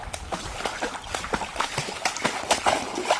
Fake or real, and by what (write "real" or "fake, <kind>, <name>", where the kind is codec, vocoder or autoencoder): real